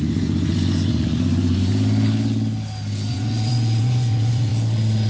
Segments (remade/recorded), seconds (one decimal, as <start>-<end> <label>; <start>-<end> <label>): 0.0-1.7 remade; 1.7-3.1 recorded; 3.1-4.5 remade; 4.5-5.1 recorded